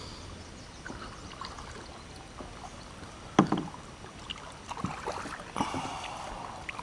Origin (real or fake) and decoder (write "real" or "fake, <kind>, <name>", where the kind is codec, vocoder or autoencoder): real